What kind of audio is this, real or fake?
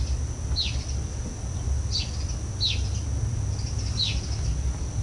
real